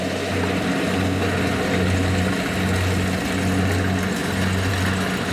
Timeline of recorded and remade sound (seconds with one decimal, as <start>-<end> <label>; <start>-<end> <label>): 0.0-5.3 recorded